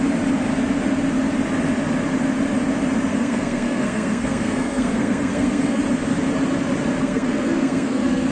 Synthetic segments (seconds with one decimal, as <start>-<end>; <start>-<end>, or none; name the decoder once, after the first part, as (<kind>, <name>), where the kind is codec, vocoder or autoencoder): 3.1-5.8 (codec, SNAC); 7.0-8.3